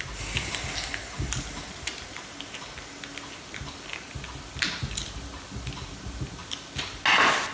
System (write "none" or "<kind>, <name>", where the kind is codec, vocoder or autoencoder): none